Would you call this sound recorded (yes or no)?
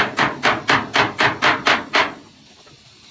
yes